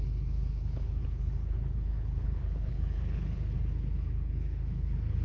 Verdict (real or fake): fake